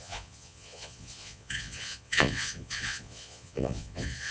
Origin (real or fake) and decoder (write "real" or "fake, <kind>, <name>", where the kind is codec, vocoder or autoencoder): fake, vocoder, Vocos